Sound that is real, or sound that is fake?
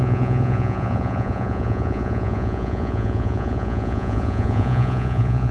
fake